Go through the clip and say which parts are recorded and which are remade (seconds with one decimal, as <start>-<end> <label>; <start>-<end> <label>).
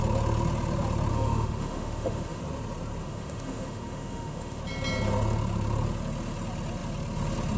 0.0-1.1 recorded; 1.1-2.4 remade; 2.4-3.0 recorded; 3.0-4.6 remade; 4.6-7.6 recorded